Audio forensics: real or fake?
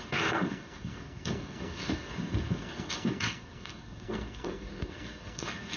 fake